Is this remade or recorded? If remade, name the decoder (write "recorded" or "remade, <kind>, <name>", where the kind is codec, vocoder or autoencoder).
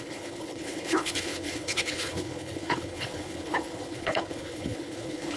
remade, codec, HILCodec